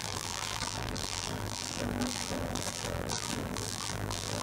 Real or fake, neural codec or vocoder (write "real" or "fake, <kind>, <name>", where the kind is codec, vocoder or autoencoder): fake, vocoder, BigVGAN v2